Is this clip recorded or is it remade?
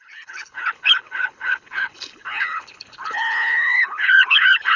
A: remade